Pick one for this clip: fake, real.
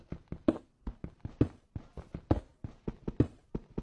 real